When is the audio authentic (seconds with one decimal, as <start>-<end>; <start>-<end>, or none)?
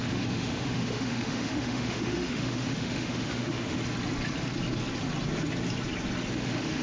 3.8-6.3